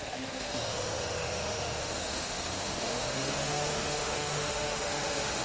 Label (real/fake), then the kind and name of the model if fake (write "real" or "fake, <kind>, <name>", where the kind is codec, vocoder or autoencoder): fake, autoencoder, DAC-VAE